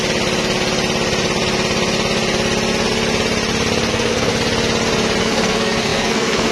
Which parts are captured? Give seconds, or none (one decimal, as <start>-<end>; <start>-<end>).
0.0-3.9; 4.3-5.2